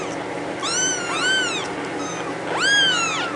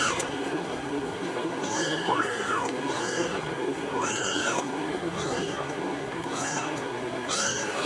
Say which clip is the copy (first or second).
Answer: second